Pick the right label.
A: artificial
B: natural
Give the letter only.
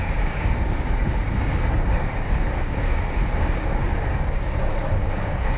A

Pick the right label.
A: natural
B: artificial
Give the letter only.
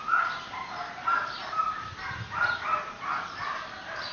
A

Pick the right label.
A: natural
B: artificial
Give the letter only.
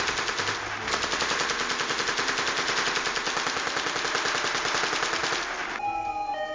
A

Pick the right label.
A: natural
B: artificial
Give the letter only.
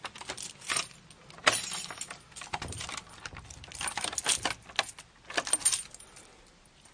A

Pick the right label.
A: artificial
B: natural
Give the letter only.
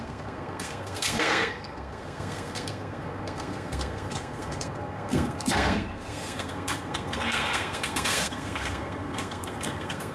A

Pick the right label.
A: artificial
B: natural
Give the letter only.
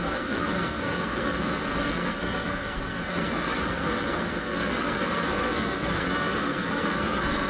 A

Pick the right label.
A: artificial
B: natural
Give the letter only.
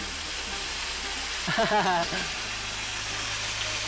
B